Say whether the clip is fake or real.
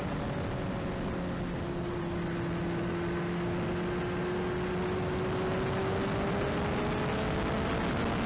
real